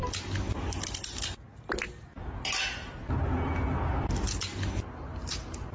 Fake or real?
real